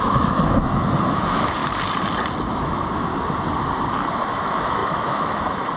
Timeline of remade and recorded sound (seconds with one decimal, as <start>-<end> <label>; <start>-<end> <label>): 0.0-1.6 remade; 1.6-2.5 recorded; 2.5-3.1 remade; 3.1-4.3 recorded; 4.3-5.8 remade